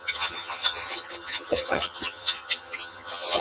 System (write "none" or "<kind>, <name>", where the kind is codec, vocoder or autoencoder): vocoder, HiFi-GAN